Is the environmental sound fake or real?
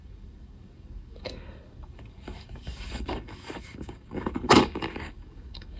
fake